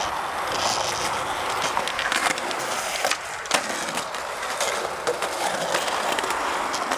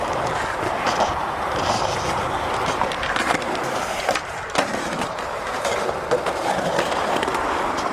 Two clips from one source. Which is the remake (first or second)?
second